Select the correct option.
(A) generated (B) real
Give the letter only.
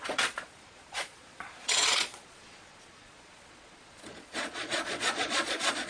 A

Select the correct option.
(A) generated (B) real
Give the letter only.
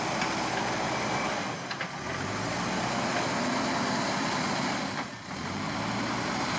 B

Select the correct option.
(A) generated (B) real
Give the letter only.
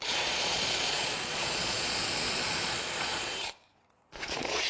A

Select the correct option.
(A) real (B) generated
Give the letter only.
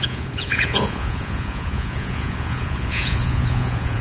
B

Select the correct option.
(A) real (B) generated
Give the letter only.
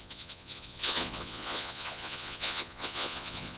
B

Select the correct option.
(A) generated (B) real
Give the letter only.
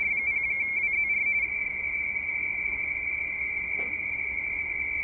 B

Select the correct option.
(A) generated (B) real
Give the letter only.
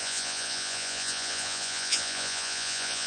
A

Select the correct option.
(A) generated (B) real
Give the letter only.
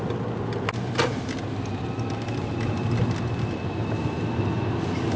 B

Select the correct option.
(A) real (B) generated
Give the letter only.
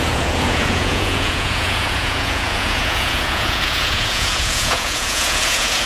B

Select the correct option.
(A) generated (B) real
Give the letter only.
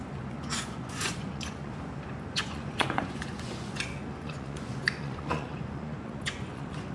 A